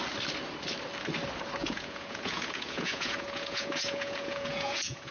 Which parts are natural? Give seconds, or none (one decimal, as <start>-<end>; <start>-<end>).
0.0-1.6